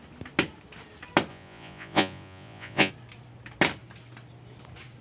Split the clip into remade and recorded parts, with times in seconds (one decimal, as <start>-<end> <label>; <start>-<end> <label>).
0.0-1.3 recorded; 1.3-2.9 remade; 2.9-5.0 recorded